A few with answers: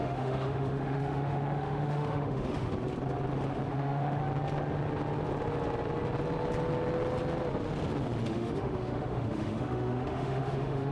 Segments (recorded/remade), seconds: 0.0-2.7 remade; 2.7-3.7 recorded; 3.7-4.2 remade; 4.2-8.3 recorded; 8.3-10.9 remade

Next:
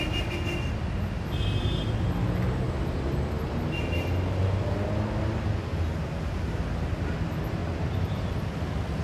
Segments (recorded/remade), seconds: 0.0-9.0 recorded

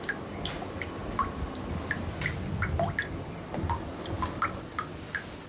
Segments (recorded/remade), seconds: 0.0-5.5 recorded

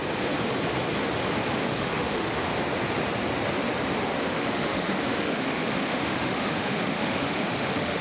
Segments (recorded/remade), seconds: 0.0-1.5 recorded; 1.5-2.5 remade; 2.5-4.0 recorded; 4.0-8.0 remade

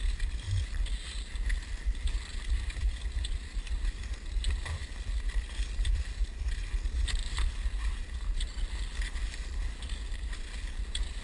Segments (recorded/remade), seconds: 0.0-11.2 recorded